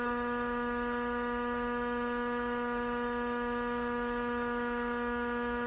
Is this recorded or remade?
remade